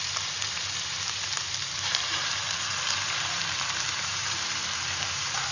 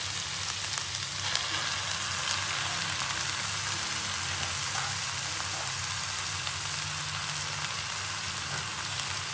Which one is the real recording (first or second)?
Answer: second